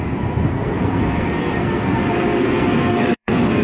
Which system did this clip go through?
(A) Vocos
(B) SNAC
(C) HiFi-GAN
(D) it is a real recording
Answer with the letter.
B